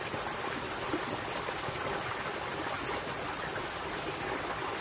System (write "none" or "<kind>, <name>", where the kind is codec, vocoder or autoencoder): vocoder, BigVGAN v2